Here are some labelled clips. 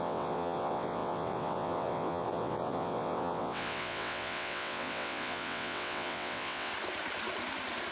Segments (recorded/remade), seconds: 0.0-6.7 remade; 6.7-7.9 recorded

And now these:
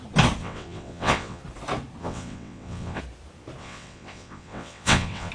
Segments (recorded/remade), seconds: 0.0-0.4 recorded; 0.4-1.4 remade; 1.4-2.0 recorded; 2.0-3.0 remade; 3.0-3.6 recorded; 3.6-5.3 remade

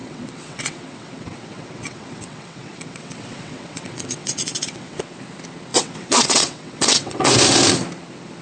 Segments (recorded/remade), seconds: 0.0-5.0 remade; 5.0-5.7 recorded; 5.7-7.3 remade; 7.3-8.4 recorded

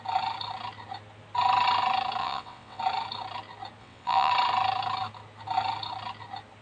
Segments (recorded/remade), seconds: 0.0-2.2 recorded; 2.2-2.8 remade; 2.8-3.8 recorded; 3.8-4.3 remade; 4.3-6.6 recorded

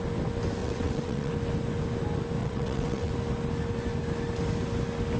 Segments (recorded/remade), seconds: 0.0-0.6 recorded; 0.6-1.3 remade; 1.3-2.4 recorded; 2.4-3.1 remade; 3.1-5.2 recorded

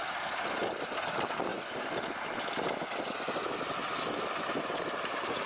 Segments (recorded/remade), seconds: 0.0-5.5 recorded